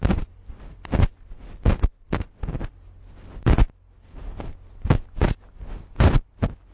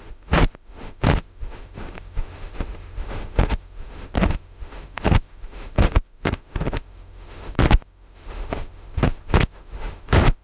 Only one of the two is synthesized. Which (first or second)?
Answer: second